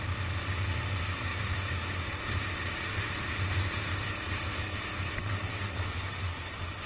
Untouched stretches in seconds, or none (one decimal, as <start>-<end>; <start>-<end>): 0.0-5.2; 5.8-6.9